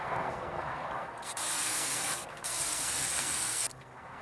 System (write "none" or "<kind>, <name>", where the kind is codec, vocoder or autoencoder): codec, SNAC